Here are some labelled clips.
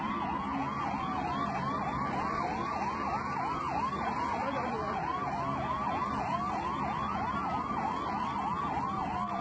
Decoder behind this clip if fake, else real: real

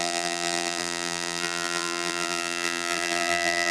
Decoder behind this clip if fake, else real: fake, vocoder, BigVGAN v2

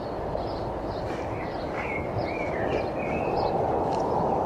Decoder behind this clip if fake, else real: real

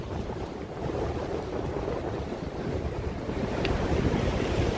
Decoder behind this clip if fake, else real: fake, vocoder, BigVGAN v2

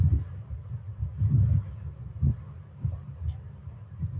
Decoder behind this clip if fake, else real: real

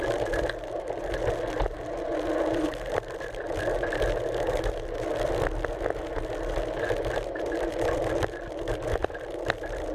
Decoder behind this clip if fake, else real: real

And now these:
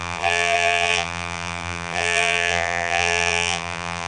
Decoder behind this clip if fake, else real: fake, vocoder, BigVGAN v2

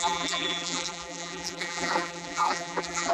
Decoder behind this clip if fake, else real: fake, vocoder, BigVGAN v2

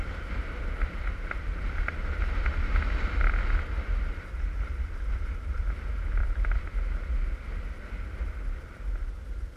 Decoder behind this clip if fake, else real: real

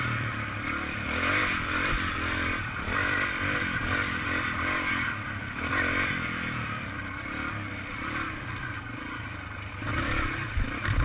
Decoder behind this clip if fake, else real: fake, vocoder, BigVGAN v2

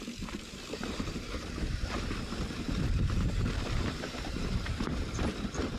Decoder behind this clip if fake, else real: fake, vocoder, BigVGAN v2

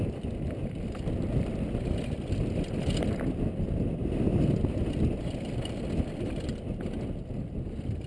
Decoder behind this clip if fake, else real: real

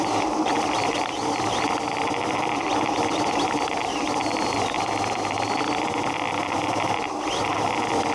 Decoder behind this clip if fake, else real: fake, vocoder, BigVGAN v2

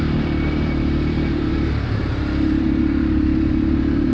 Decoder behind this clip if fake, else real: fake, vocoder, BigVGAN v2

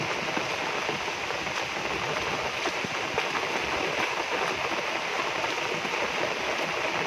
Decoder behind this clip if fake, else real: real